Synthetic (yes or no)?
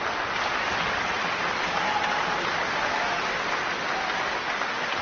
no